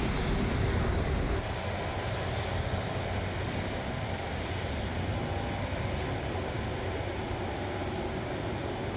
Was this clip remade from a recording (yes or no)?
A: no